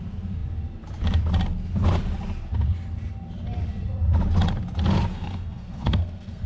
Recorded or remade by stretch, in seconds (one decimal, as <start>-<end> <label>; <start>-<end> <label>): 0.0-5.1 recorded; 5.1-6.5 remade